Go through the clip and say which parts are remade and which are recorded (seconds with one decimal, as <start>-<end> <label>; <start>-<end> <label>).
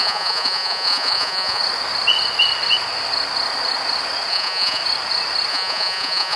0.0-1.6 remade; 1.6-4.3 recorded; 4.3-4.8 remade; 4.8-5.5 recorded; 5.5-6.4 remade